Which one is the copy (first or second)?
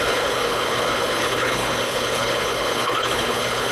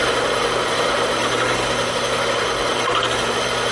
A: first